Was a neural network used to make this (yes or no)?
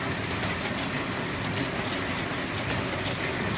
no